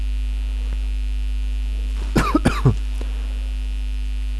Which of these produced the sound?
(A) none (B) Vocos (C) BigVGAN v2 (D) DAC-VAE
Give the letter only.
A